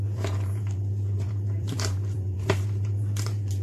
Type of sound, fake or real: fake